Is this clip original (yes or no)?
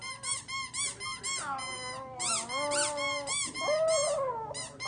yes